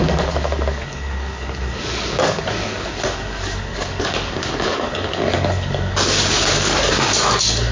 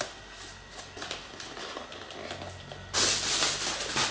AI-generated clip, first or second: first